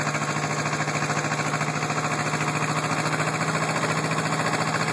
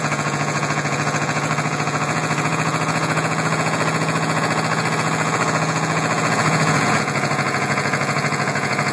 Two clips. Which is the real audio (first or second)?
first